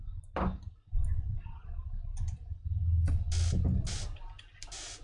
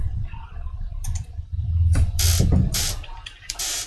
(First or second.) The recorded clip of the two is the first